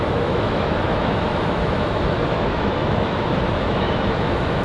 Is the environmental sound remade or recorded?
remade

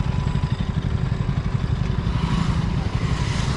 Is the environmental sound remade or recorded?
recorded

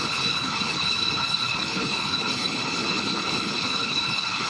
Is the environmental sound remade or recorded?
remade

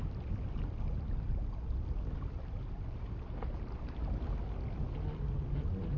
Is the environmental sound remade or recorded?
recorded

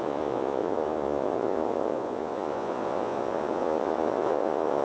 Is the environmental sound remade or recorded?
remade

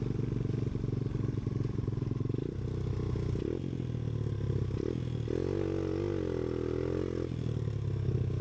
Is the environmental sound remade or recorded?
recorded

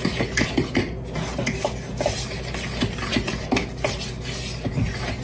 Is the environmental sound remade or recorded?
recorded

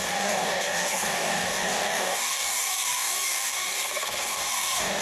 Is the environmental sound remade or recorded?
remade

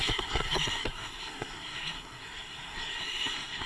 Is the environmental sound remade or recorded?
remade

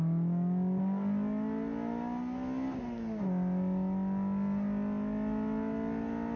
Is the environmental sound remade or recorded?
recorded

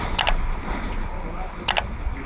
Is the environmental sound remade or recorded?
recorded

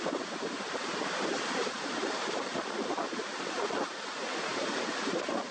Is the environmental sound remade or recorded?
recorded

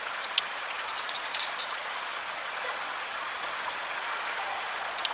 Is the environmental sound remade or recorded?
remade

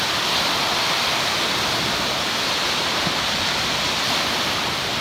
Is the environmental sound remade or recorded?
recorded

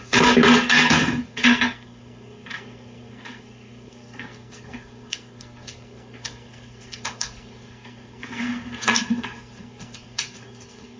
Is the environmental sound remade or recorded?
remade